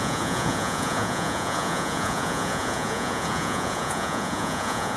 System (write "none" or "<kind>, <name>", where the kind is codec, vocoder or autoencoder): vocoder, Vocos